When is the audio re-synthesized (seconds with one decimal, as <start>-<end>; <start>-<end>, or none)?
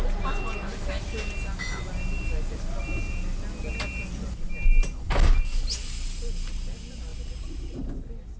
none